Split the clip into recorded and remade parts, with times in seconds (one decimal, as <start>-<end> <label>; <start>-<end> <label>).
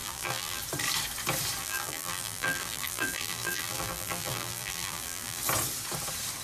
0.0-0.6 remade; 0.6-1.6 recorded; 1.6-5.4 remade; 5.4-6.4 recorded